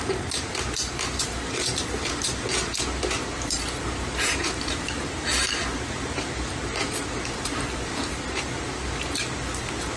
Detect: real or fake fake